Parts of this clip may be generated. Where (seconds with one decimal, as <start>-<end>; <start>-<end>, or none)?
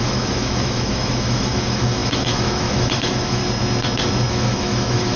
0.0-3.4; 4.3-5.2